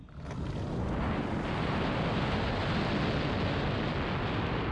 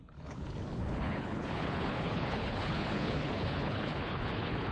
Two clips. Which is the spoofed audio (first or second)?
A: second